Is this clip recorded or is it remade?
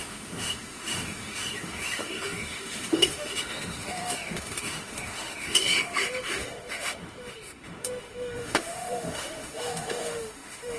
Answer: remade